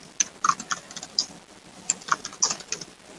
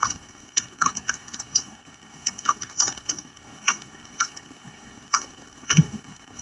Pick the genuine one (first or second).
first